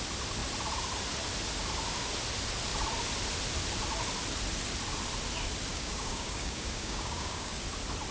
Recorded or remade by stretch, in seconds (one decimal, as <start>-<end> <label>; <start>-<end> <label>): 0.0-5.7 recorded; 5.7-7.6 remade; 7.6-8.1 recorded